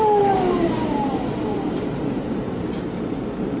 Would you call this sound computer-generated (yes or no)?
yes